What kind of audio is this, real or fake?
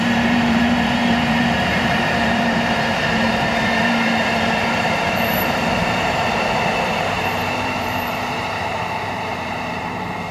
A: fake